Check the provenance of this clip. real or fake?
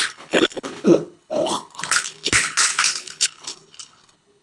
fake